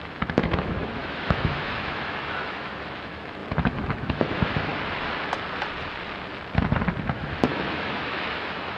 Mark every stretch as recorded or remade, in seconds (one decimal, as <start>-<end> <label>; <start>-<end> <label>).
0.0-4.7 remade; 4.7-7.0 recorded; 7.0-8.8 remade